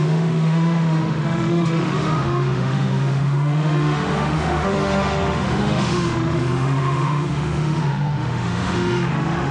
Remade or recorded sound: remade